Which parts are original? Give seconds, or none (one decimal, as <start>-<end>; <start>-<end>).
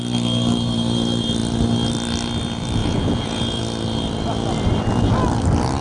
0.0-2.8; 3.6-5.8